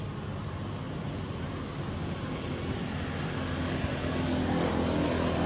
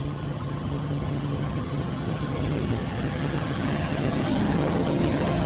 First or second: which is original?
first